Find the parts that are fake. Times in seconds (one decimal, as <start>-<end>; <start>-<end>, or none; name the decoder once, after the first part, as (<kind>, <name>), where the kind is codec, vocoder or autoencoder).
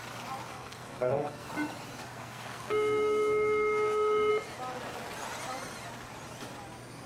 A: 0.5-1.5 (codec, SNAC); 2.1-4.3